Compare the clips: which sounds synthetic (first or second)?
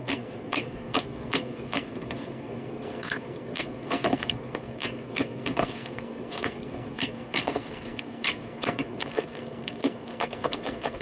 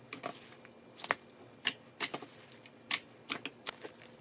first